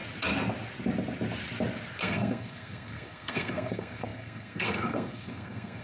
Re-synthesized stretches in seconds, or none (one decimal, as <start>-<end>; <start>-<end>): 2.0-5.8